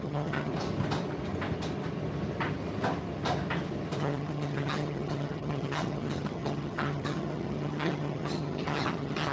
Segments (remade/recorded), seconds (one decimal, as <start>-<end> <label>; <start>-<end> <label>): 0.0-0.5 remade; 0.5-4.0 recorded; 4.0-9.3 remade